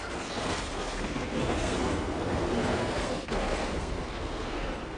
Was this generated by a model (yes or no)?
yes